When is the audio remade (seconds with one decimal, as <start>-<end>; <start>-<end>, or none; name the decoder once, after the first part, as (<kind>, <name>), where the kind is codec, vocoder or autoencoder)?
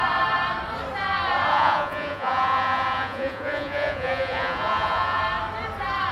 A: 1.5-5.2 (vocoder, Vocos)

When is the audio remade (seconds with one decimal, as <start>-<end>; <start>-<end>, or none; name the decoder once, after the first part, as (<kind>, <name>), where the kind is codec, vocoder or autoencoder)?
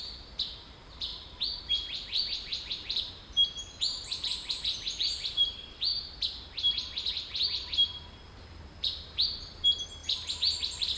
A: 0.0-1.1 (vocoder, BigVGAN v2); 1.6-5.9; 7.9-10.0; 10.6-11.0